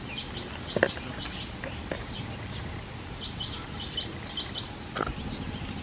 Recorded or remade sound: recorded